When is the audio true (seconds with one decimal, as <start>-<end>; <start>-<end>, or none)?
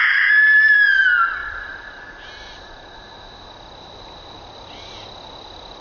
0.0-5.8